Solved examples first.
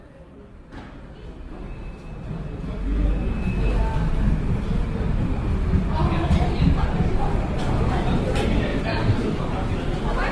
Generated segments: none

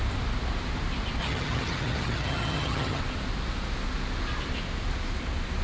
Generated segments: 1.2-3.0

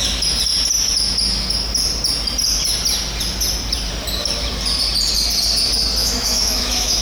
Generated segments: 6.0-7.0